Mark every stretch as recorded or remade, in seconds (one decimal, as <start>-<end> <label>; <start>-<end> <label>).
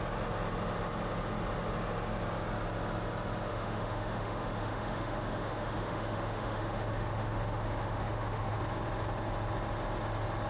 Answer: 0.0-3.5 recorded; 3.5-8.6 remade; 8.6-10.5 recorded